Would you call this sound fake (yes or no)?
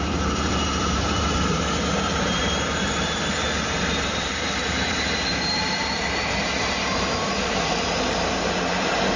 yes